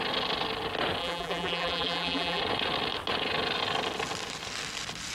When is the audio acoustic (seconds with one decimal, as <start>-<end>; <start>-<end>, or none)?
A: 0.0-1.0; 2.4-5.1